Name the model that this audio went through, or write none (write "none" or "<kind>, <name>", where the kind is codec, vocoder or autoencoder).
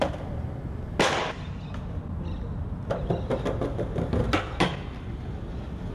none